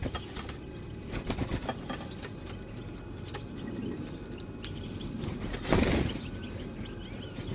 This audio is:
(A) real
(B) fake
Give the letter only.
A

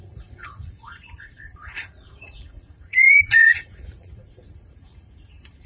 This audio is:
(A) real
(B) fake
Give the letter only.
B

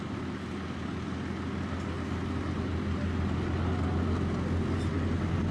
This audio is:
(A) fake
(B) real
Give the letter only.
B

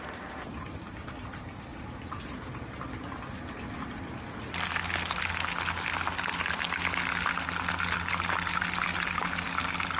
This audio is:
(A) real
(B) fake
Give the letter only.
A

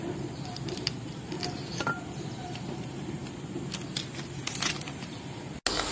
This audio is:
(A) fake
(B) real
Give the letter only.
B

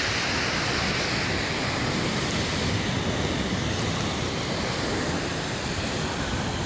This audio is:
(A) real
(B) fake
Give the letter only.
A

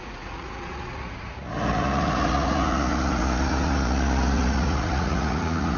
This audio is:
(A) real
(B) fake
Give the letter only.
B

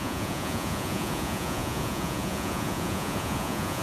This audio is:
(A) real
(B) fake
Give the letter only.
B